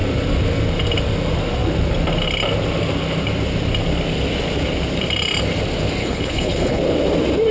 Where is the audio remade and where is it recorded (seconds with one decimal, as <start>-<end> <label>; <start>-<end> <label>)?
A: 0.0-6.0 recorded; 6.0-6.8 remade; 6.8-7.5 recorded